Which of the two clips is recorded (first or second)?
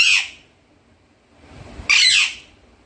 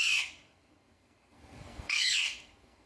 first